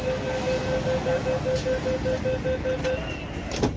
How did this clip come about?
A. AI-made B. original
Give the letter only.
B